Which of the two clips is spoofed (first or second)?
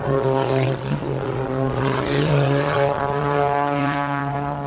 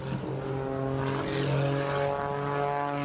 first